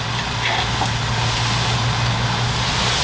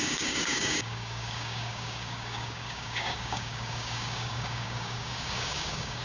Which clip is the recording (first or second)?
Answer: first